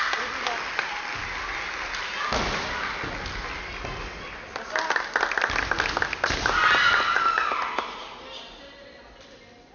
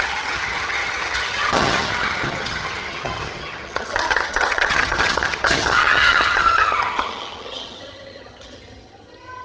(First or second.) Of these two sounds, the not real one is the second